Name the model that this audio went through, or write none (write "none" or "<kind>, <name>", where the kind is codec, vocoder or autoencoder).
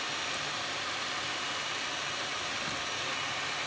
none